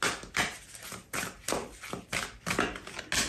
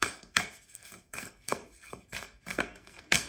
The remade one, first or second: second